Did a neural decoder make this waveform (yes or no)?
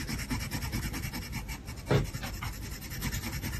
no